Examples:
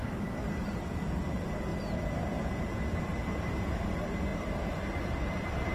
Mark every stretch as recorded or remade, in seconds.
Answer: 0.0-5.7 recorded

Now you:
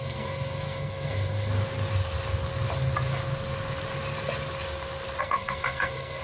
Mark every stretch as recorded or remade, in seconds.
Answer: 0.0-1.5 remade; 1.5-5.2 recorded; 5.2-6.2 remade

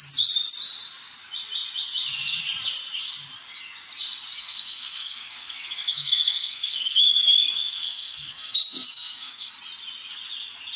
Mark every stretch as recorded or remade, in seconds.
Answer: 0.0-4.4 recorded; 4.4-9.5 remade; 9.5-10.8 recorded

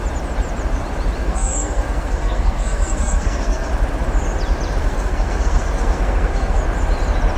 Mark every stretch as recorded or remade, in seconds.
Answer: 0.0-1.2 recorded; 1.2-3.7 remade; 3.7-4.8 recorded; 4.8-6.6 remade; 6.6-7.4 recorded

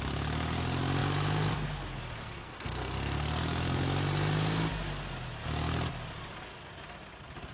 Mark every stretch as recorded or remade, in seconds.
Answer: 0.0-2.2 recorded; 2.2-3.4 remade; 3.4-7.5 recorded

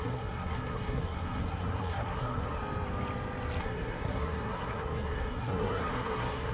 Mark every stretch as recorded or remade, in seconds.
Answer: 0.0-2.6 remade; 2.6-3.6 recorded; 3.6-6.5 remade

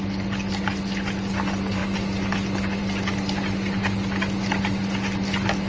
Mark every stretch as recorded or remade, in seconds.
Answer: 0.0-5.7 recorded

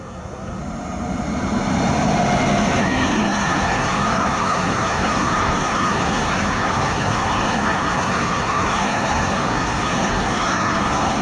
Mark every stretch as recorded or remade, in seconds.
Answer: 0.0-0.6 remade; 0.6-2.8 recorded; 2.8-11.2 remade